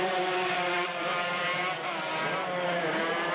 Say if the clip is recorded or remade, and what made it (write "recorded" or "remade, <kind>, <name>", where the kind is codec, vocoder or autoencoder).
remade, vocoder, BigVGAN v2